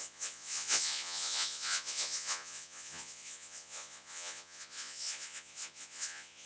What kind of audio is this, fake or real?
fake